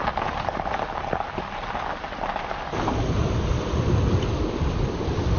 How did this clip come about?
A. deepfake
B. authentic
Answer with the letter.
B